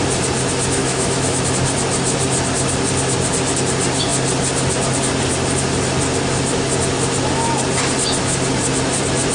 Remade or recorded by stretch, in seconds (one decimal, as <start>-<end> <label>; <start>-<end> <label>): 0.0-0.8 recorded; 0.8-1.4 remade; 1.4-9.3 recorded